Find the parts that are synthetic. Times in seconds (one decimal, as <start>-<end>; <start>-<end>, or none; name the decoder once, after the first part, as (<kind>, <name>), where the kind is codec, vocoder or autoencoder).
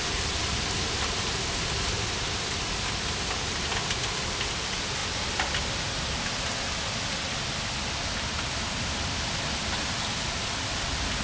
none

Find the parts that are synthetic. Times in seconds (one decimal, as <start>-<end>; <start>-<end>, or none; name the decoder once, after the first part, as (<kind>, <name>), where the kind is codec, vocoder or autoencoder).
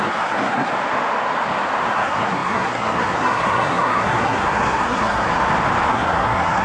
0.0-0.7 (codec, SNAC); 1.9-5.3; 5.9-6.6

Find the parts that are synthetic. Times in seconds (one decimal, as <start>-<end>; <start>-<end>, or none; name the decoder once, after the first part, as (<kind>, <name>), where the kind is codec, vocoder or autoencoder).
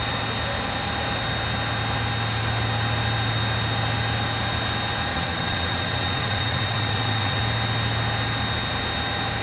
5.1-7.4 (vocoder, WaveNeXt)